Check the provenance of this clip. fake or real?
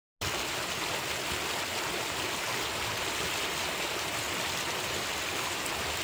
real